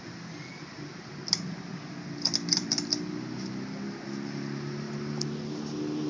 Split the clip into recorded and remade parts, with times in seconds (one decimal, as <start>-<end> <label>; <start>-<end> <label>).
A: 0.0-6.1 recorded